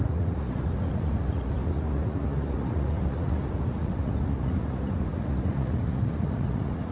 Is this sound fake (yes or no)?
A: yes